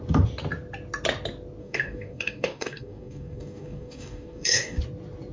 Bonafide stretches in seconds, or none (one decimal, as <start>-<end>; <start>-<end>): 0.0-1.6; 4.8-5.3